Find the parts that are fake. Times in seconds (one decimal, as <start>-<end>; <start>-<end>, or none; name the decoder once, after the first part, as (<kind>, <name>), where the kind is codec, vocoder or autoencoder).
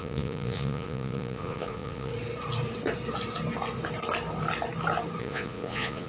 0.0-2.1 (vocoder, Vocos); 5.2-6.1